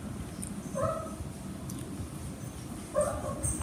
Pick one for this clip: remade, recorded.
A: recorded